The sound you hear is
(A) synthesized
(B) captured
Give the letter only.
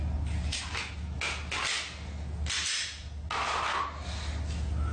B